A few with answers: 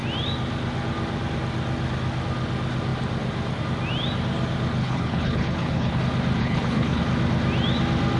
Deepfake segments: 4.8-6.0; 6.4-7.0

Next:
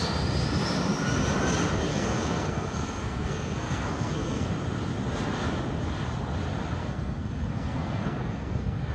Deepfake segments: 1.9-4.5; 6.8-8.9

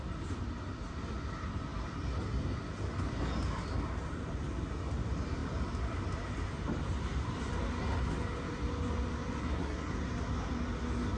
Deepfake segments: 9.4-9.9

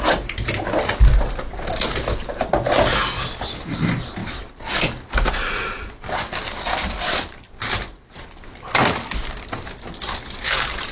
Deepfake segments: none